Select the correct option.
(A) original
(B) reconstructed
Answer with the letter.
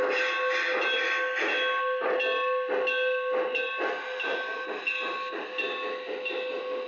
A